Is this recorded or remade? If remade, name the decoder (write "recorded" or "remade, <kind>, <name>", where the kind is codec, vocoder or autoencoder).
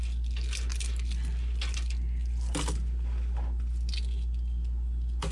recorded